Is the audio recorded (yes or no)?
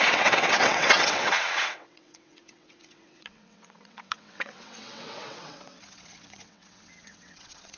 no